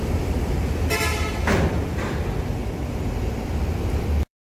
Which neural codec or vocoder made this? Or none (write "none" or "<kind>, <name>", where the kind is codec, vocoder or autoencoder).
vocoder, BigVGAN v2